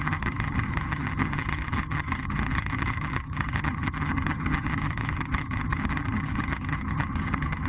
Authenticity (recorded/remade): remade